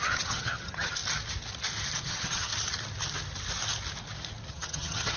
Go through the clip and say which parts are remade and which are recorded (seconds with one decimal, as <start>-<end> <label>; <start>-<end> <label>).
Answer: 0.0-1.0 remade; 1.0-2.0 recorded; 2.0-2.5 remade; 2.5-4.5 recorded; 4.5-5.2 remade